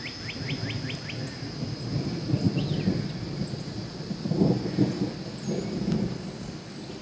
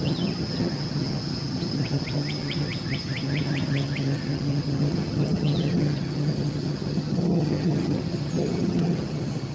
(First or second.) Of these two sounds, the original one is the first